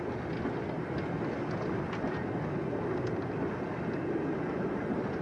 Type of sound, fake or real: real